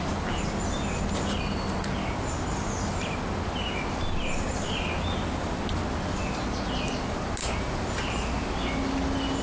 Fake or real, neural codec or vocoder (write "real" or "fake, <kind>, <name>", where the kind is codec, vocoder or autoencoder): real